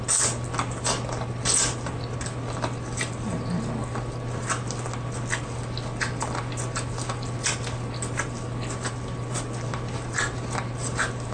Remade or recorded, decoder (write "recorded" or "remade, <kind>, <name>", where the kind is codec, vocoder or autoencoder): recorded